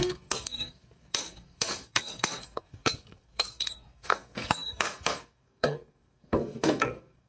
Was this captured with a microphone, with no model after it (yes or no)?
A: no